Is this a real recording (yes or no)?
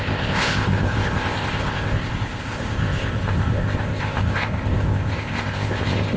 no